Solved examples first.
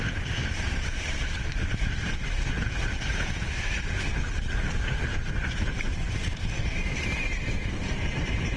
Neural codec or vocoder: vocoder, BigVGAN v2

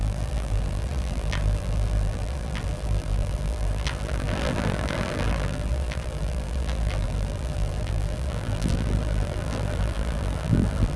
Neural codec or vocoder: vocoder, BigVGAN v2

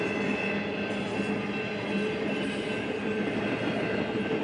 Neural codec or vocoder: none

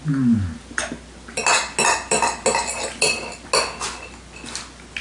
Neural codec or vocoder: none